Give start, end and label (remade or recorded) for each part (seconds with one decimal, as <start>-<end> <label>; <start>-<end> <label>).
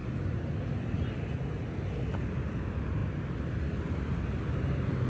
0.0-5.1 recorded